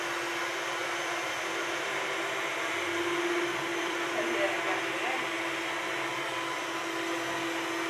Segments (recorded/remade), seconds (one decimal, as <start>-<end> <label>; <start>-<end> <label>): 0.0-0.8 recorded; 0.8-3.0 remade; 3.0-3.7 recorded; 3.7-4.3 remade; 4.3-6.3 recorded; 6.3-6.8 remade; 6.8-7.9 recorded